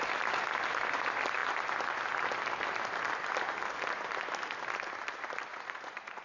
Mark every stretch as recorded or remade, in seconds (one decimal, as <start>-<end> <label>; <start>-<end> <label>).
0.0-5.5 recorded; 5.5-6.2 remade